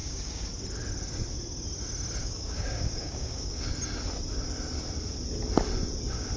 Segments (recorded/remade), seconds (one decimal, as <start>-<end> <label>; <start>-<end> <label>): 0.0-0.5 remade; 0.5-2.2 recorded; 2.2-3.7 remade; 3.7-6.4 recorded